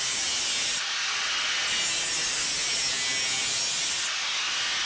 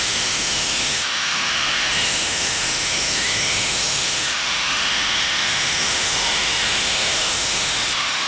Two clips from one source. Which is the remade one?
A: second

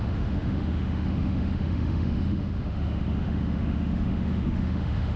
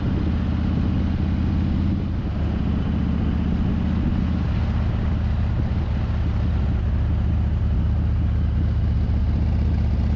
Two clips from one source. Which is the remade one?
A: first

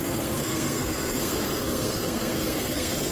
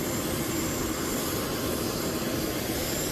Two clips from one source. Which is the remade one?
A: first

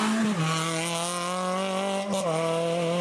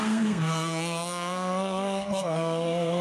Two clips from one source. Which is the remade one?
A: second